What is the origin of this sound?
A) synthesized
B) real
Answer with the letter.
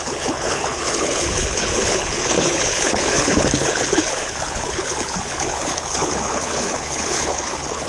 A